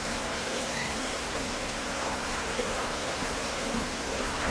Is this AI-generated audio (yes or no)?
yes